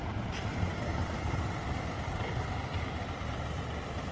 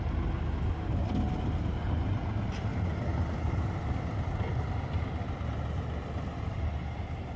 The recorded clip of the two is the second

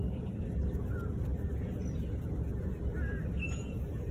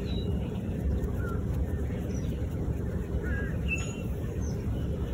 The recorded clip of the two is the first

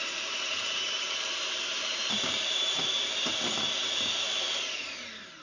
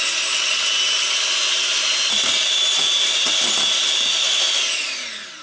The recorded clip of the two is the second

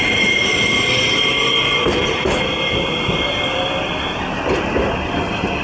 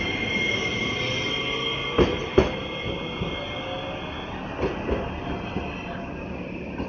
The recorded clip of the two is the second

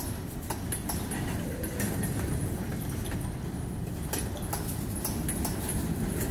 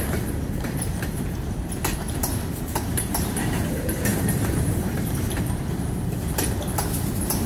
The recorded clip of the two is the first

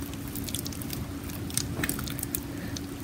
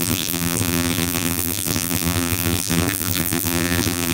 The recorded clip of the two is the first